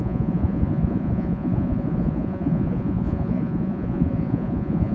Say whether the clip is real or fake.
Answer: fake